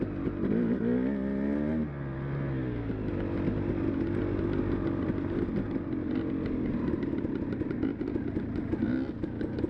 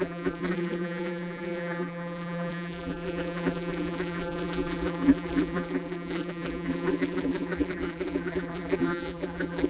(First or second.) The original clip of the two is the first